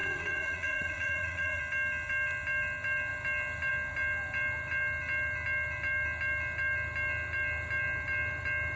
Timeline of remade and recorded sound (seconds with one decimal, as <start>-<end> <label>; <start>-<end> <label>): 0.0-1.6 remade; 1.6-8.8 recorded